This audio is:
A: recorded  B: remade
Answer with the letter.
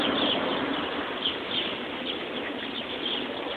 A